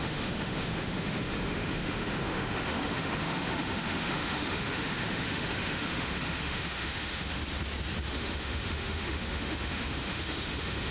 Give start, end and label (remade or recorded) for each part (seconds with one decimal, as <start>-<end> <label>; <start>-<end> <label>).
0.0-7.4 remade; 7.4-8.1 recorded; 8.1-10.9 remade